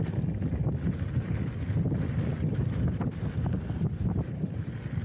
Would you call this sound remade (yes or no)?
no